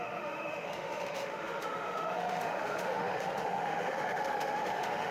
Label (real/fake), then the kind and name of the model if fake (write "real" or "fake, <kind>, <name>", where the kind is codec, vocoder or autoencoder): fake, autoencoder, DAC-VAE